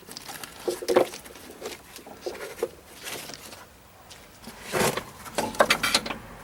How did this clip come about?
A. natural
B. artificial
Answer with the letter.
A